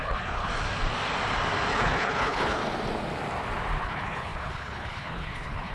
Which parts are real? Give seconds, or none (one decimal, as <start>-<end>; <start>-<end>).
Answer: 0.5-1.7; 2.6-3.8